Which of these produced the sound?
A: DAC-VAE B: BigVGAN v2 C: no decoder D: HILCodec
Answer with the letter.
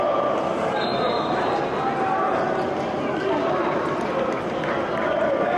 C